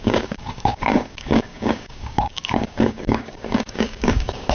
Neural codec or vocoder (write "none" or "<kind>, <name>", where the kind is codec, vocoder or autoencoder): codec, DAC